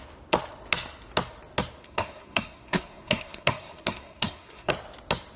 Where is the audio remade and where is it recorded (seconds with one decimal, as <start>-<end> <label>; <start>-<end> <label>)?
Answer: 0.0-1.8 recorded; 1.8-4.7 remade; 4.7-5.4 recorded